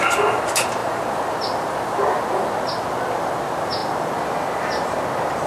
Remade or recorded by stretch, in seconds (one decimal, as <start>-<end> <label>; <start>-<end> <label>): 0.0-5.5 recorded